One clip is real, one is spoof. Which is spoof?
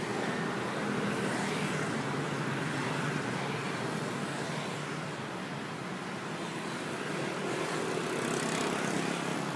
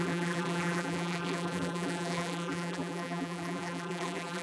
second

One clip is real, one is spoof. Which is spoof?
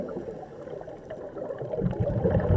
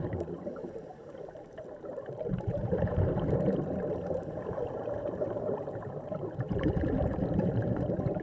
second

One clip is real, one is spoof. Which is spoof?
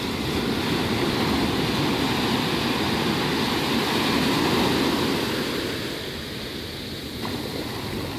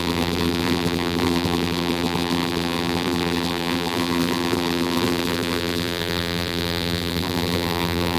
second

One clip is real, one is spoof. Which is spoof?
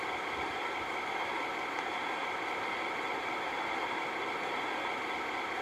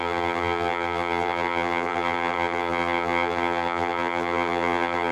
second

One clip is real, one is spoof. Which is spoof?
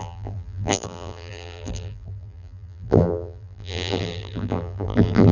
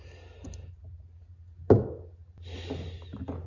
first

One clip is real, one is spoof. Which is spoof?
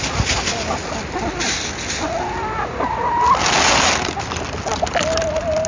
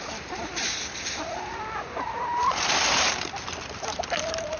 second